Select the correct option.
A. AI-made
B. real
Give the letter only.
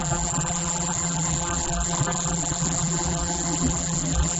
A